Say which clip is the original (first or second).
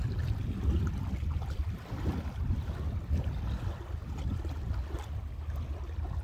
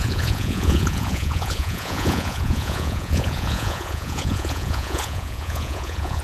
first